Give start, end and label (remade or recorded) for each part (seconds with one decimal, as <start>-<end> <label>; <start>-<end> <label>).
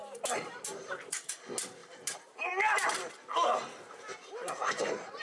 0.0-1.3 remade; 1.3-1.8 recorded; 1.8-2.5 remade; 2.5-4.1 recorded; 4.1-5.2 remade